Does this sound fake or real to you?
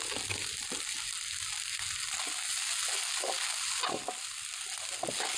real